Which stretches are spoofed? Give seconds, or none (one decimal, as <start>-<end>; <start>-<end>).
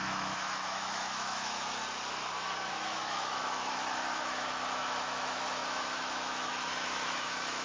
0.0-1.8; 2.7-7.6